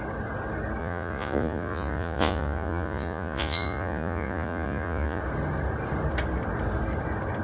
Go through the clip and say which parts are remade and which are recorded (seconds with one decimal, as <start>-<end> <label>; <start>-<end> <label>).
0.0-0.8 recorded; 0.8-5.2 remade; 5.2-7.4 recorded